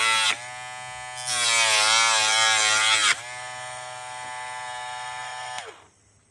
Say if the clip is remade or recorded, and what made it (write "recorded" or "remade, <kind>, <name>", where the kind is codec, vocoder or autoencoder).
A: recorded